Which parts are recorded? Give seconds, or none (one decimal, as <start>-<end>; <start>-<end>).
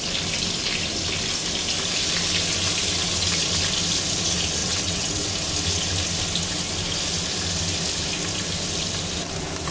0.0-4.6; 5.3-9.7